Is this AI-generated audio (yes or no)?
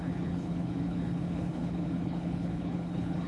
yes